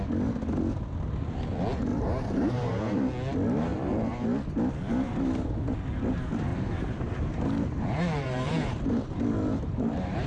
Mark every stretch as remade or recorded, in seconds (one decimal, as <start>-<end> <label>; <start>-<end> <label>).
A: 0.0-1.9 recorded; 1.9-2.7 remade; 2.7-6.5 recorded; 6.5-10.3 remade